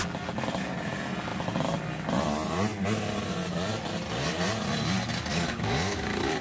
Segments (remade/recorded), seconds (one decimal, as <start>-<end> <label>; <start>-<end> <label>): 0.0-5.3 recorded; 5.3-6.4 remade